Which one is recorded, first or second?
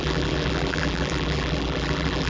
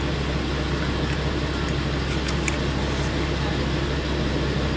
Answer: second